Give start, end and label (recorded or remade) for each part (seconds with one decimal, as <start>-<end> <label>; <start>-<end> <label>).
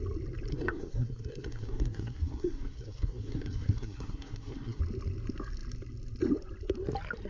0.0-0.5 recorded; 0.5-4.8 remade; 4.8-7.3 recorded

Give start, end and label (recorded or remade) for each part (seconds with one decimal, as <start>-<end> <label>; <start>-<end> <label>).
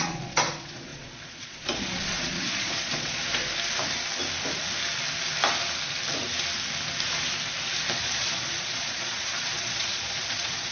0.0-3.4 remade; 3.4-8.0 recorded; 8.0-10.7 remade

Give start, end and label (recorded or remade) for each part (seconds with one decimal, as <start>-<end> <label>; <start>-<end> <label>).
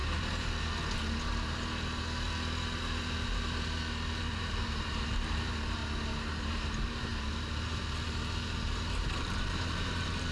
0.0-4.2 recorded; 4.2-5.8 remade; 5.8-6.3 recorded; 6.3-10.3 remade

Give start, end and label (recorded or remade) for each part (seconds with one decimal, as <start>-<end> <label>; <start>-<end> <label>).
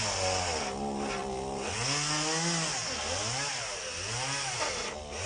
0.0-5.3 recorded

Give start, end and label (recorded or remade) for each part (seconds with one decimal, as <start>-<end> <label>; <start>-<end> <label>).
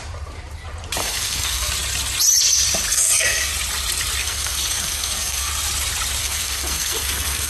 0.0-1.0 recorded; 1.0-1.7 remade; 1.7-2.9 recorded; 2.9-3.5 remade; 3.5-4.2 recorded; 4.2-5.5 remade; 5.5-6.2 recorded; 6.2-7.5 remade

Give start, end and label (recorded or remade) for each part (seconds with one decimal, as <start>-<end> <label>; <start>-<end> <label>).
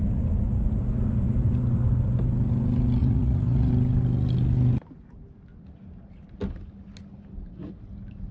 0.0-3.0 recorded; 3.0-3.7 remade; 3.7-8.3 recorded